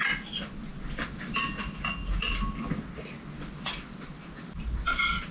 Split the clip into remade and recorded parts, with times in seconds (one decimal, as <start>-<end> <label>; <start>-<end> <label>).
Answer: 0.0-5.3 recorded